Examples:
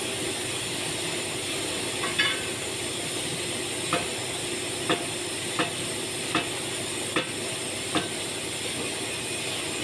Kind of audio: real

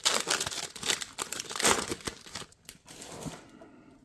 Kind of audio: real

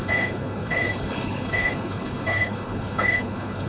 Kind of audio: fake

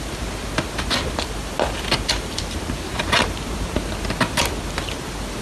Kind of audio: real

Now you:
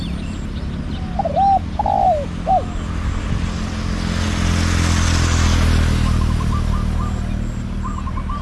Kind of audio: real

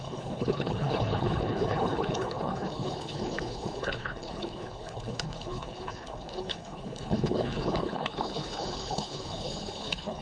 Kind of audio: fake